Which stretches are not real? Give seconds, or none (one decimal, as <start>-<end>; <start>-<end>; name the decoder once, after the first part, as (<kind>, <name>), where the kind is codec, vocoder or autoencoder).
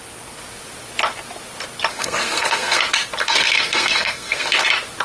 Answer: 1.9-2.8 (codec, SNAC); 3.2-4.5